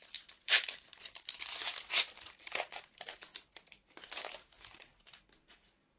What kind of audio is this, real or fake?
fake